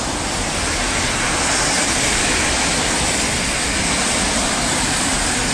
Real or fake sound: fake